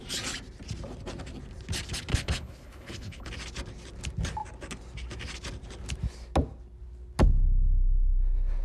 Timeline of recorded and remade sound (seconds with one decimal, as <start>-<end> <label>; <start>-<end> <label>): 0.0-2.1 recorded; 2.1-3.3 remade; 3.3-8.6 recorded